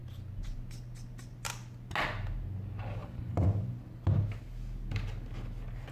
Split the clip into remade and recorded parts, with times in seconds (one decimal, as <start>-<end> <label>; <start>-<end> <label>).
0.0-3.0 recorded; 3.0-3.5 remade; 3.5-5.9 recorded